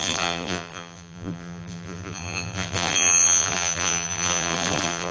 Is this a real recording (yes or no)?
no